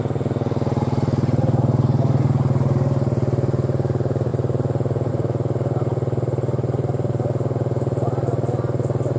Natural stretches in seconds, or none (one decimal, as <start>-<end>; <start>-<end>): 0.0-9.2